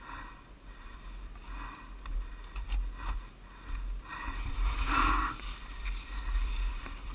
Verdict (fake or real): real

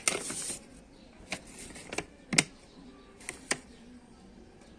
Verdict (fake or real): real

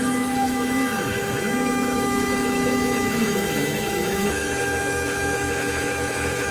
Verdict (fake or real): fake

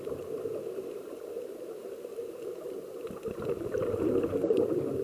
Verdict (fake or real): real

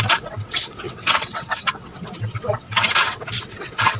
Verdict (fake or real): fake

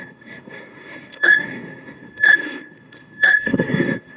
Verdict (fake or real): fake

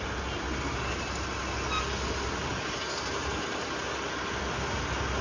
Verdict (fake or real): real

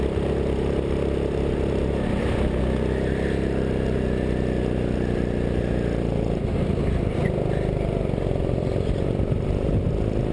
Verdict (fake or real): real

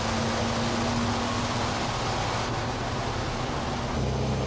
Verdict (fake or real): real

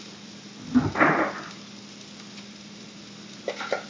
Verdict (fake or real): real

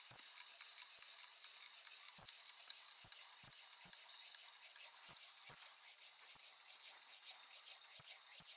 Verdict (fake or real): fake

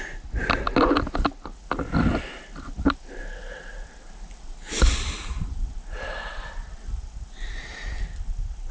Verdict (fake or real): real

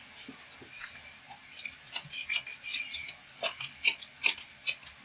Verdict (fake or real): real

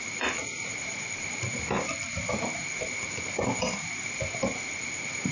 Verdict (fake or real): fake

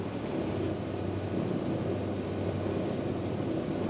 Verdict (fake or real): real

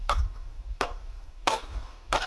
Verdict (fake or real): fake